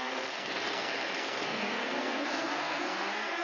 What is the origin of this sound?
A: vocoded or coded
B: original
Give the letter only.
A